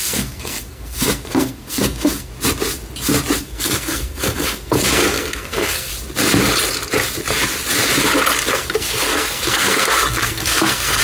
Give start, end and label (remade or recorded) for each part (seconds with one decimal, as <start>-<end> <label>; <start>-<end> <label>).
0.0-2.3 remade; 2.3-3.4 recorded; 3.4-5.9 remade; 5.9-8.5 recorded; 8.5-11.0 remade

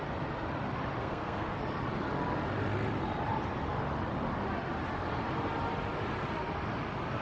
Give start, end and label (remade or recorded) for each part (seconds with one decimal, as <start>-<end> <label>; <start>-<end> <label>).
0.0-1.0 recorded; 1.0-1.6 remade; 1.6-7.2 recorded

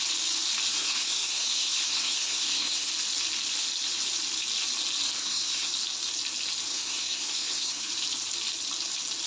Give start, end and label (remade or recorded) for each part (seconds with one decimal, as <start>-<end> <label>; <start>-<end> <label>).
0.0-0.7 recorded; 0.7-2.9 remade; 2.9-5.2 recorded; 5.2-5.7 remade; 5.7-6.7 recorded; 6.7-7.9 remade; 7.9-9.3 recorded

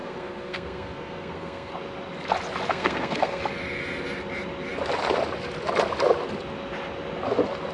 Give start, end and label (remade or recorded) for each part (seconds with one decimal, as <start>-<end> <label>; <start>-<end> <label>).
0.0-1.7 remade; 1.7-2.7 recorded; 2.7-3.4 remade; 3.4-7.7 recorded

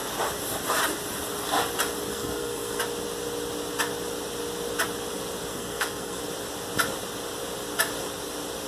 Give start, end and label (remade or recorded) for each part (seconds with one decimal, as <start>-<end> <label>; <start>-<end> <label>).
0.0-2.1 recorded; 2.1-2.8 remade; 2.8-5.5 recorded; 5.5-6.2 remade; 6.2-8.7 recorded

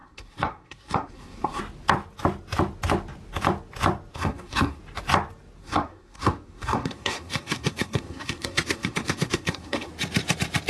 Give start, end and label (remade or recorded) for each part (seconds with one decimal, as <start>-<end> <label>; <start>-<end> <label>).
0.0-1.6 remade; 1.6-4.1 recorded; 4.1-4.8 remade; 4.8-5.6 recorded; 5.6-9.9 remade; 9.9-10.7 recorded

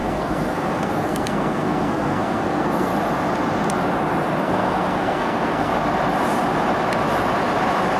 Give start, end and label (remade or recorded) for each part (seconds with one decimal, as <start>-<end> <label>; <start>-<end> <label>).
0.0-2.9 remade; 2.9-4.4 recorded; 4.4-5.7 remade; 5.7-8.0 recorded

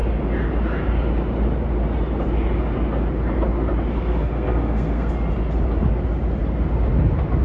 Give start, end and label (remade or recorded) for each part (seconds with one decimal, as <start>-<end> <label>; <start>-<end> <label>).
0.0-3.9 recorded; 3.9-5.1 remade; 5.1-7.4 recorded